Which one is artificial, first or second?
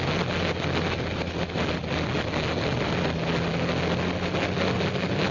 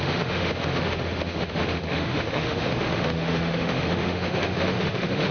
second